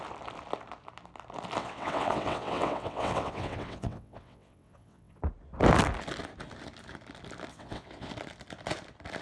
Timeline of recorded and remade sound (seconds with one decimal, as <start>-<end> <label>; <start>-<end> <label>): 0.0-1.6 recorded; 1.6-5.2 remade; 5.2-7.5 recorded; 7.5-8.1 remade; 8.1-9.2 recorded

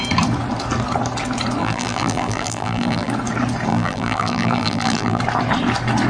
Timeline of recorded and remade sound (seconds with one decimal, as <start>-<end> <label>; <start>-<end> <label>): 0.0-1.6 recorded; 1.6-3.1 remade; 3.1-3.7 recorded; 3.7-5.2 remade; 5.2-6.1 recorded

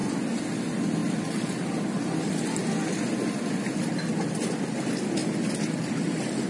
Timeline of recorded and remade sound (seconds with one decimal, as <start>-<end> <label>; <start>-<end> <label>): 0.0-6.5 recorded